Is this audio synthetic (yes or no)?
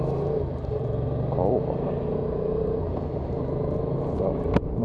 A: yes